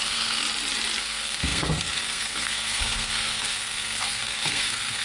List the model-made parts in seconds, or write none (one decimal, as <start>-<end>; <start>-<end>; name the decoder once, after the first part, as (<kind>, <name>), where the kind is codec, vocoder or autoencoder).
0.0-0.4 (codec, SNAC); 1.0-5.0